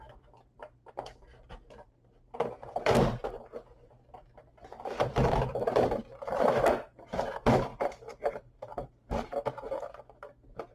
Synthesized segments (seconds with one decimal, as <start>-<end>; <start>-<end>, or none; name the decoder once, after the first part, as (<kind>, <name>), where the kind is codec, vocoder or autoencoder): 0.0-10.7 (vocoder, BigVGAN v2)